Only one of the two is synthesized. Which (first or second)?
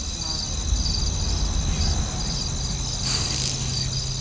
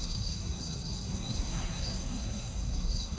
second